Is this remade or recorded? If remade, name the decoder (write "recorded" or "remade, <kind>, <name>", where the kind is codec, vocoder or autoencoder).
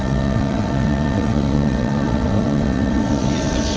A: remade, vocoder, WaveNeXt